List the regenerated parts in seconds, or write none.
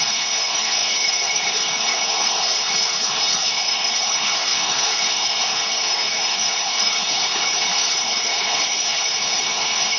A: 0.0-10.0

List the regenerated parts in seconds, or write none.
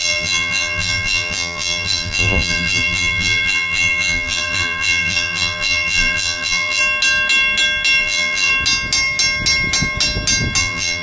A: 0.0-6.8; 8.0-8.5; 10.6-11.0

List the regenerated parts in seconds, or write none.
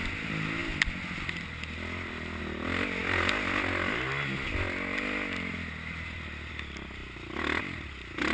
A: none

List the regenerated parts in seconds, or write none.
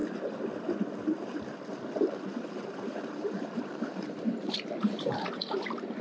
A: 1.7-5.3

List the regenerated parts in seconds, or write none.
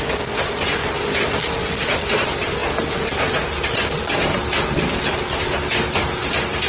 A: none